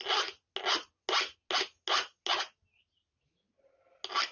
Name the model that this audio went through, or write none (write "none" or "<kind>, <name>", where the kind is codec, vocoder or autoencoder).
none